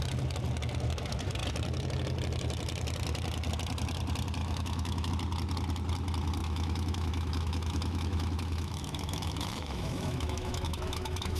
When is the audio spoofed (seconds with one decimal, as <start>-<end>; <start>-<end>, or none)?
4.4-5.1; 6.4-11.4